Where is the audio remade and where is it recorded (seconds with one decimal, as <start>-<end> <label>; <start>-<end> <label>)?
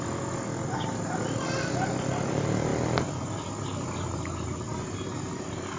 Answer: 0.0-5.8 recorded